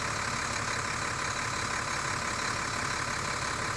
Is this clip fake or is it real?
real